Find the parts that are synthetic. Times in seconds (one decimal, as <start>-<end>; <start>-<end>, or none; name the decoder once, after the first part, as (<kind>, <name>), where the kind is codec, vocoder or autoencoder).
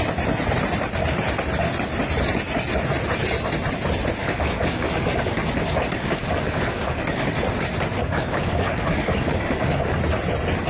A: 4.2-7.3 (codec, DAC); 8.0-10.0